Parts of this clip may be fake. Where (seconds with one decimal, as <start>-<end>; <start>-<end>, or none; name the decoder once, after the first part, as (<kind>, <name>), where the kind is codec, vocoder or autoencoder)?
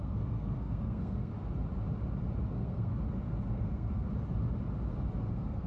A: 0.0-1.3 (codec, SNAC); 2.5-2.9; 3.5-4.1; 5.3-5.7